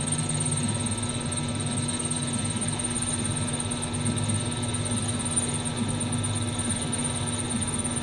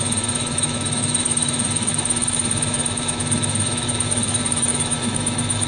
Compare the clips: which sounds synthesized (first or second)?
second